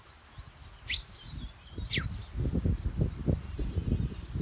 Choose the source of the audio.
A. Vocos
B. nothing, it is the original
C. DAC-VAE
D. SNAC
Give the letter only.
B